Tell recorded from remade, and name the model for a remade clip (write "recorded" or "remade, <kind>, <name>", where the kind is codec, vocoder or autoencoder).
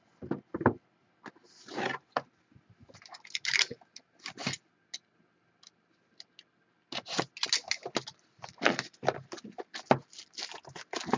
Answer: recorded